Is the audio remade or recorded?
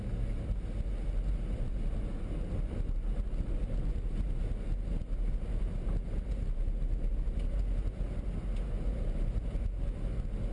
recorded